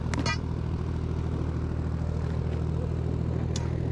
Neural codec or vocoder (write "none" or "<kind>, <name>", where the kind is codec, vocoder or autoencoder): none